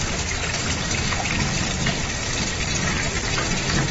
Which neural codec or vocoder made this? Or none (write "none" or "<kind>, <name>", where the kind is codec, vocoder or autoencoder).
none